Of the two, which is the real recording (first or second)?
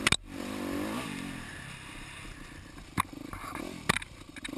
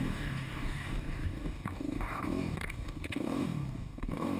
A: first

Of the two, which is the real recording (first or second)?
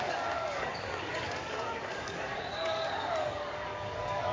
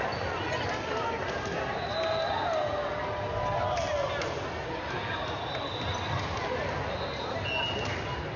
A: second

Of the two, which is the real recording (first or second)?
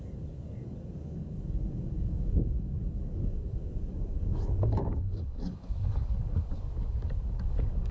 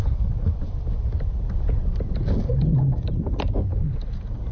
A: second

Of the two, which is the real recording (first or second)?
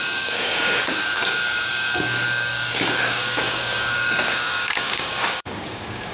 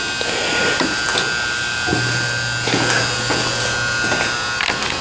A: second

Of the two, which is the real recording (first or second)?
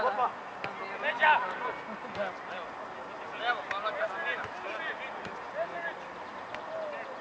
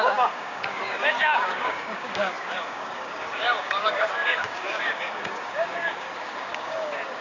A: first